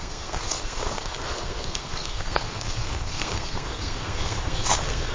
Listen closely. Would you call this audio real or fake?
fake